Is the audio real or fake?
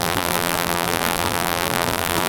fake